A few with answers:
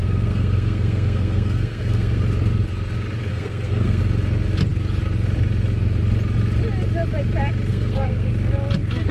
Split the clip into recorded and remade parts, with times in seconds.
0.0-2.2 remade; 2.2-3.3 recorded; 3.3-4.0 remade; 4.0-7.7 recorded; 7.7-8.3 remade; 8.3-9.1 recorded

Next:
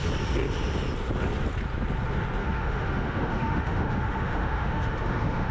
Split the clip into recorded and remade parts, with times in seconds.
0.0-2.4 recorded; 2.4-5.5 remade

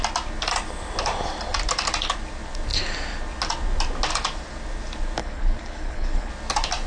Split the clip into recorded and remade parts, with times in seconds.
0.0-5.2 recorded; 5.2-6.3 remade; 6.3-6.9 recorded

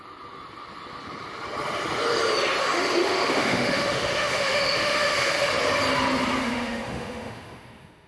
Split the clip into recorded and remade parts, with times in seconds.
0.0-2.6 recorded; 2.6-5.5 remade; 5.5-6.4 recorded; 6.4-8.1 remade